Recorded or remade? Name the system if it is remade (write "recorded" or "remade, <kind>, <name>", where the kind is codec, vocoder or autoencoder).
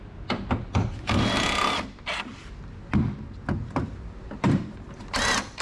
recorded